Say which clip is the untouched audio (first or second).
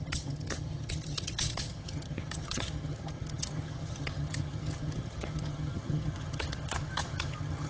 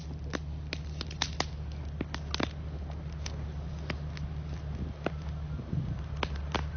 second